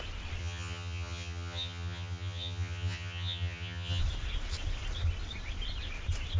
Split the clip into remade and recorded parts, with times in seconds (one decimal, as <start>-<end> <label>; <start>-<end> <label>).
0.0-0.4 recorded; 0.4-4.0 remade; 4.0-6.4 recorded